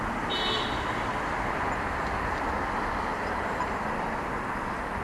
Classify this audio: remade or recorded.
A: recorded